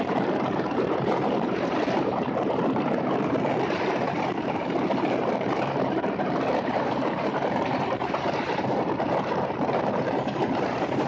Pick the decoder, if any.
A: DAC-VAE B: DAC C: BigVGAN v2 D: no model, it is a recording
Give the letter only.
C